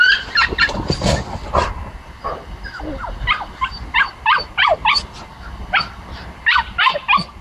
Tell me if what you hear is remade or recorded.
recorded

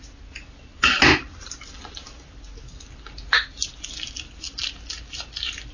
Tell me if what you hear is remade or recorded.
recorded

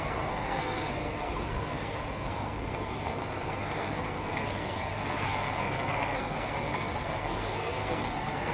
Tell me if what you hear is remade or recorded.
remade